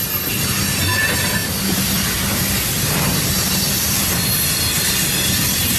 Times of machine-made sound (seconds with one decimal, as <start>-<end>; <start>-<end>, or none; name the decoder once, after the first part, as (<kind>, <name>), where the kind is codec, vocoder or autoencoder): 1.4-4.2 (vocoder, BigVGAN v2)